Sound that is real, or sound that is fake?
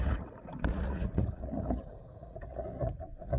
fake